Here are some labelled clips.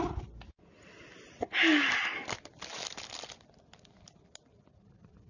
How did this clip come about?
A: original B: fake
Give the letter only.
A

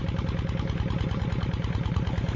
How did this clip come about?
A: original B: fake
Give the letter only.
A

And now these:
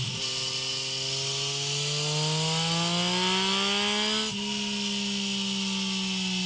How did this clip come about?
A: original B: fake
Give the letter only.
A